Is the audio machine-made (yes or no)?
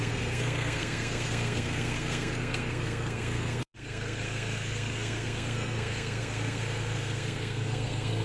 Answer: yes